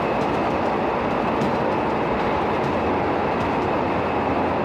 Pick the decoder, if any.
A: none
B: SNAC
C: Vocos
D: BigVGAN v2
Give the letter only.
A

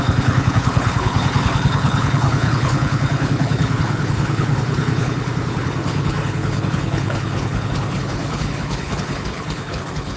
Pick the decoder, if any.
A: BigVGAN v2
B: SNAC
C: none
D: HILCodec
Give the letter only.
D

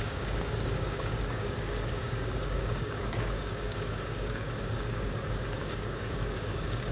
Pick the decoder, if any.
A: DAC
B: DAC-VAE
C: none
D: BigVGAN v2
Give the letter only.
A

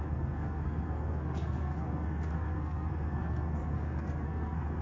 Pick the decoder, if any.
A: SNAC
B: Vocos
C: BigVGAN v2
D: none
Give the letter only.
A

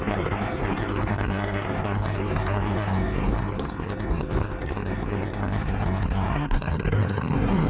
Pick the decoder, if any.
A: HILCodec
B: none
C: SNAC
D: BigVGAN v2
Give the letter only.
C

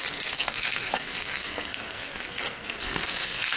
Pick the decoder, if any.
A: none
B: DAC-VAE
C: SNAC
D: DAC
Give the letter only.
C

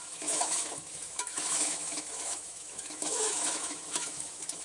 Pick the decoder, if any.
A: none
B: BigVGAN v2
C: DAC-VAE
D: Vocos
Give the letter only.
C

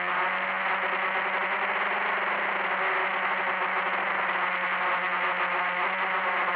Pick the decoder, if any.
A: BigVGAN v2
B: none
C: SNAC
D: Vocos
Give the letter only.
B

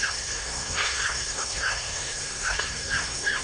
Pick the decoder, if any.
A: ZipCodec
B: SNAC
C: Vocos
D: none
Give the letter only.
B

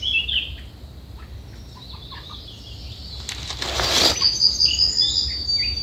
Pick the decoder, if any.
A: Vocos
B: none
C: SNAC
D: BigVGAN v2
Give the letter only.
B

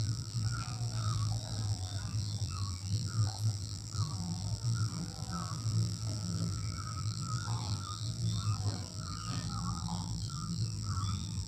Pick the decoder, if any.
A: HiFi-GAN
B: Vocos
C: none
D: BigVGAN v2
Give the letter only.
D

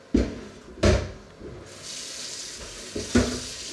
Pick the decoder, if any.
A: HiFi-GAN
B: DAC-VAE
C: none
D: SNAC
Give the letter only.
C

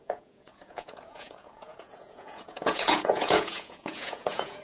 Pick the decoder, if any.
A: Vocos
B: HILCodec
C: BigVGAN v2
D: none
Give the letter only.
A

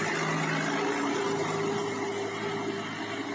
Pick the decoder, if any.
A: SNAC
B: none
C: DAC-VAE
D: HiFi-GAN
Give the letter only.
B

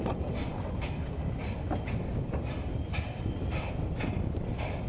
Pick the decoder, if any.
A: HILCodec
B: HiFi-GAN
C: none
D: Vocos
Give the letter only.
C